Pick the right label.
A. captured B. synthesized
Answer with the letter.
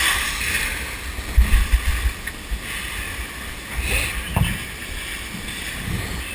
A